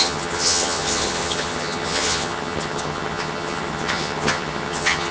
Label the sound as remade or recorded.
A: remade